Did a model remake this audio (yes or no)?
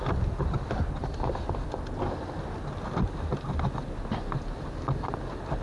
no